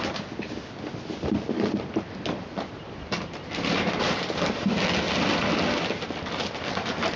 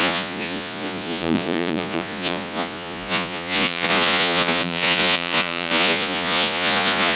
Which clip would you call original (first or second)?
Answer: first